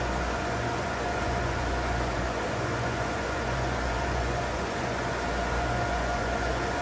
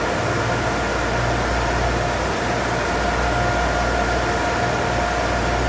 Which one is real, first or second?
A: second